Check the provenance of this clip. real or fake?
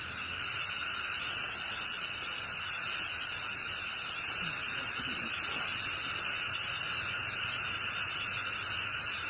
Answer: real